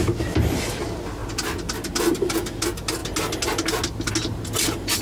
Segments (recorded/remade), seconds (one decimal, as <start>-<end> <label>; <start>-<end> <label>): 0.0-5.0 recorded